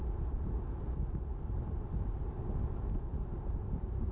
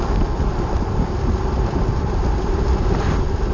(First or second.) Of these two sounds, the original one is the first